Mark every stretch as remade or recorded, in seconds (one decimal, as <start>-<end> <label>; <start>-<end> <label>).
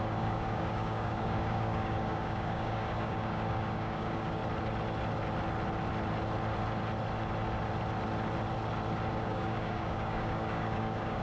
0.0-4.4 remade; 4.4-9.1 recorded; 9.1-11.2 remade